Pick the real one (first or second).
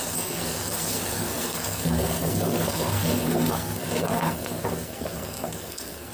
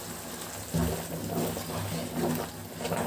second